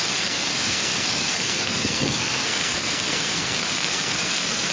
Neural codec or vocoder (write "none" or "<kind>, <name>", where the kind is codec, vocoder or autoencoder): codec, SNAC